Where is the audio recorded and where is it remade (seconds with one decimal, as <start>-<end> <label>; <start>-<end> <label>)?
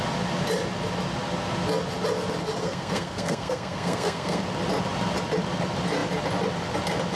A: 0.0-2.6 recorded; 2.6-4.4 remade; 4.4-7.2 recorded